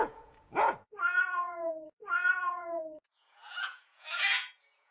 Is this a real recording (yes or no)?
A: no